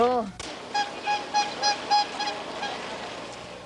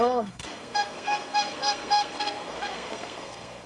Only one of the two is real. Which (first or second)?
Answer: first